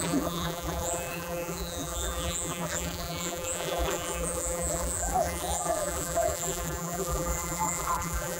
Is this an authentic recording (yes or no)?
no